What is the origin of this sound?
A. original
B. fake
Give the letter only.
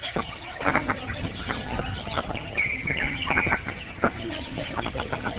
B